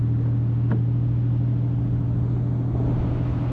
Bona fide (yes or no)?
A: yes